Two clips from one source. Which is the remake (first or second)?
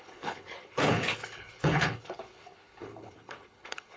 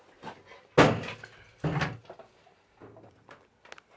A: first